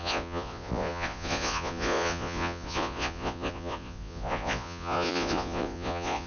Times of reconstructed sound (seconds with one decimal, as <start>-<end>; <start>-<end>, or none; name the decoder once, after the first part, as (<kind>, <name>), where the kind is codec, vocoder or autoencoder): 0.0-6.3 (vocoder, Vocos)